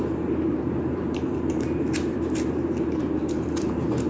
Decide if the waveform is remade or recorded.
remade